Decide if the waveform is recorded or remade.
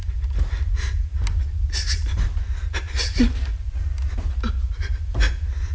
recorded